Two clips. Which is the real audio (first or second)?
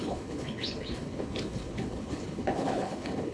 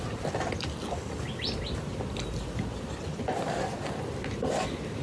second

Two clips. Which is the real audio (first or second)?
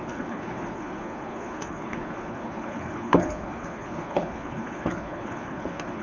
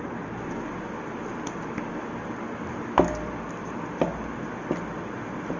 second